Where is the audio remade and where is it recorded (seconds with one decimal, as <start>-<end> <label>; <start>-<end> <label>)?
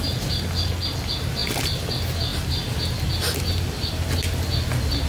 0.0-1.4 recorded; 1.4-1.9 remade; 1.9-5.1 recorded